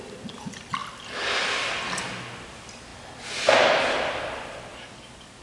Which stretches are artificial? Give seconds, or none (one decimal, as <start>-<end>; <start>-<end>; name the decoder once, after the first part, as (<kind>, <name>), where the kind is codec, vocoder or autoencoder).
4.7-5.4 (codec, DAC)